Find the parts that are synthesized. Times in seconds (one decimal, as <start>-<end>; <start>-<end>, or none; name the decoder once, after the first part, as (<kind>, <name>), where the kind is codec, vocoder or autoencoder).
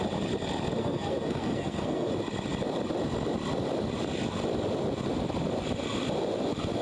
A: 0.8-2.1 (codec, SNAC)